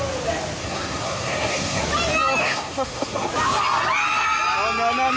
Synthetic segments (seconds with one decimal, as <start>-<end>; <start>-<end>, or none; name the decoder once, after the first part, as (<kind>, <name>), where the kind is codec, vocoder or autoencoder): 0.6-1.8 (codec, SNAC); 2.4-3.3